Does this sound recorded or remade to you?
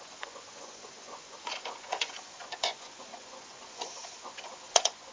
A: remade